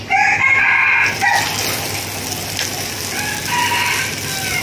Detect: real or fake real